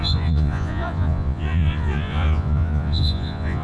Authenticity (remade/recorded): remade